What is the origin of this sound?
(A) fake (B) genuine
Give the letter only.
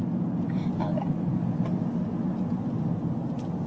B